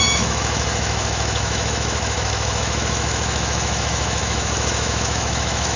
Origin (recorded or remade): remade